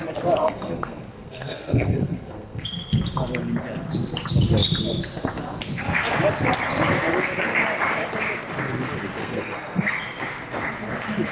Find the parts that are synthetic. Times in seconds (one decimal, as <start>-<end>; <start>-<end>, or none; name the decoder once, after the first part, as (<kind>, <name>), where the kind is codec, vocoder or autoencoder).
0.4-3.0 (codec, SNAC); 9.2-10.0